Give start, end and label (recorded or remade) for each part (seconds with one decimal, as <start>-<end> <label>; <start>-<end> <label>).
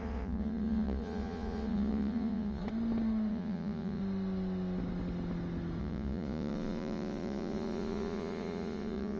0.0-2.6 remade; 2.6-3.3 recorded; 3.3-4.0 remade; 4.0-5.8 recorded; 5.8-9.2 remade